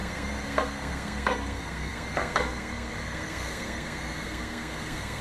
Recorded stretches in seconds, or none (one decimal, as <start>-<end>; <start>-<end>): none